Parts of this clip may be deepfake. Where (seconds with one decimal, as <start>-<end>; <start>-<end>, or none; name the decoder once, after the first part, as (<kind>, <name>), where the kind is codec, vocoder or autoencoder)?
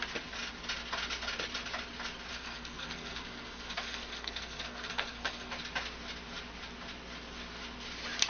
2.3-5.5 (codec, SNAC)